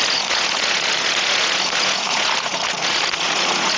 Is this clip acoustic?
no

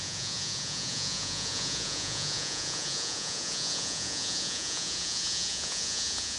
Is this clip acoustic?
no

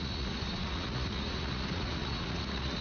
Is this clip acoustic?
no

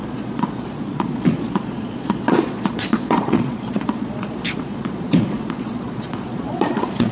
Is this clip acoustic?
no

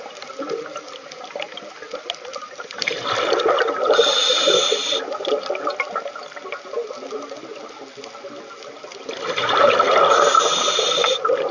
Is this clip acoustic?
yes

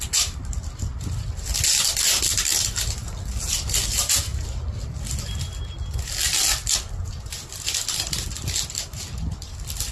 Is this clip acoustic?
yes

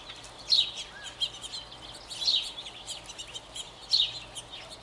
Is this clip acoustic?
yes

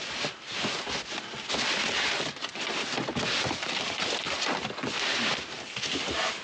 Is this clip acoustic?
yes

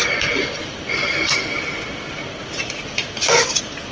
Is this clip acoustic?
yes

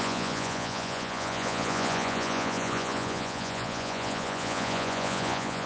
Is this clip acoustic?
no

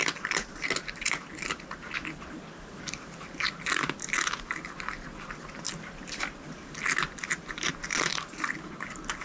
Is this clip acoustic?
yes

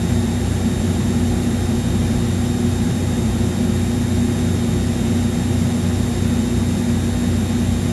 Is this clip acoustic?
yes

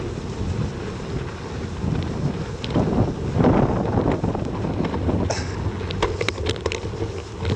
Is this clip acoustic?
yes